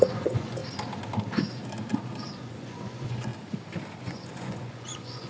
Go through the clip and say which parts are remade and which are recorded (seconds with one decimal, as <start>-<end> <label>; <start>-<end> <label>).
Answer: 0.0-0.6 remade; 0.6-2.3 recorded; 2.3-3.3 remade; 3.3-4.0 recorded; 4.0-5.3 remade